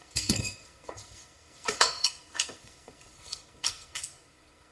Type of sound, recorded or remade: remade